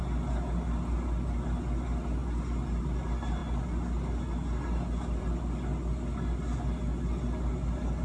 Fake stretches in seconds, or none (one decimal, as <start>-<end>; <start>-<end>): none